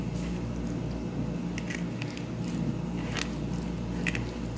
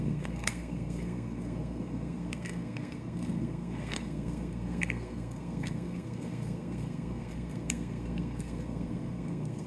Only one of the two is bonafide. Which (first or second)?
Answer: first